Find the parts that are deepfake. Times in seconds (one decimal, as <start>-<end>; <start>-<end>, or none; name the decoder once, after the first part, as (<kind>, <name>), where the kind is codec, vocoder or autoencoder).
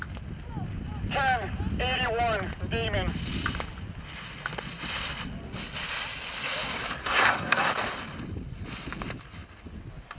7.0-7.7 (codec, SNAC)